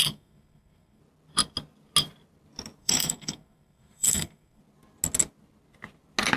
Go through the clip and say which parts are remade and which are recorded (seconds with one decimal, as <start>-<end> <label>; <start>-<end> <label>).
0.0-1.0 remade; 1.0-2.8 recorded; 2.8-4.6 remade; 4.6-6.4 recorded

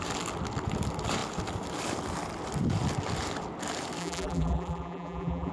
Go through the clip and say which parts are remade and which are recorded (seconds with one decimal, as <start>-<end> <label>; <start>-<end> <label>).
0.0-4.0 recorded; 4.0-5.5 remade

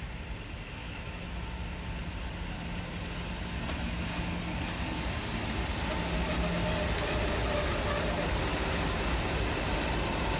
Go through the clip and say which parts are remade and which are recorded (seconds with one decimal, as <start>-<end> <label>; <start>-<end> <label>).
0.0-0.8 recorded; 0.8-1.3 remade; 1.3-10.4 recorded

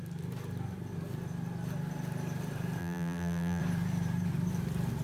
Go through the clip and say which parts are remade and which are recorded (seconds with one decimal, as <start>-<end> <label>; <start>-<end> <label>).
0.0-2.8 recorded; 2.8-3.6 remade; 3.6-5.0 recorded

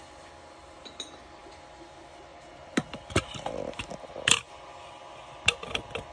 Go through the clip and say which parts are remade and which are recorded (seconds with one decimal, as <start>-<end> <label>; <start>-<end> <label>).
0.0-6.1 recorded